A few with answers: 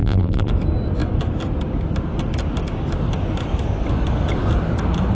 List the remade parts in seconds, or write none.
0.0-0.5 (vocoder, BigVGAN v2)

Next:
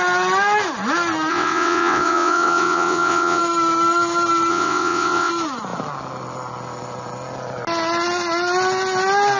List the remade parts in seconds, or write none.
1.3-3.4 (vocoder, WaveNeXt); 4.5-5.3

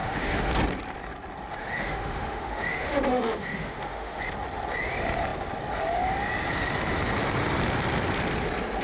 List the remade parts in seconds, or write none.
0.0-0.5 (autoencoder, DAC-VAE); 1.6-4.2

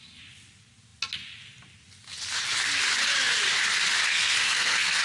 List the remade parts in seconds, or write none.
4.1-5.0 (codec, SNAC)